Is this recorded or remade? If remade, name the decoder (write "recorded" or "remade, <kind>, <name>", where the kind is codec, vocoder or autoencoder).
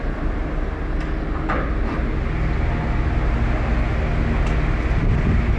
recorded